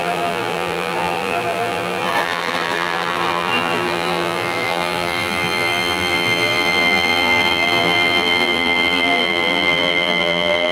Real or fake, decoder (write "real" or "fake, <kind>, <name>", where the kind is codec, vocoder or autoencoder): fake, vocoder, BigVGAN v2